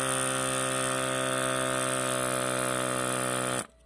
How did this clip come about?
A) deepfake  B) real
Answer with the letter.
B